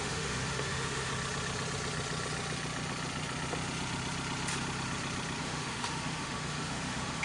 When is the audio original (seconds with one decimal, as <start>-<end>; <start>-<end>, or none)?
1.1-5.4